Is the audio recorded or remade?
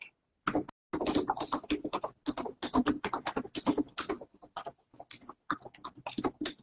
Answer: recorded